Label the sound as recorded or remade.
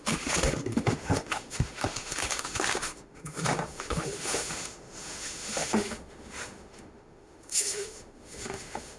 remade